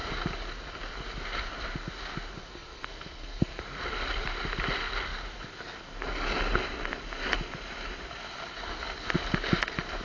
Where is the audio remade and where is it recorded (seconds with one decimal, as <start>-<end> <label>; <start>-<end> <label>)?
0.0-2.4 recorded; 2.4-3.6 remade; 3.6-10.0 recorded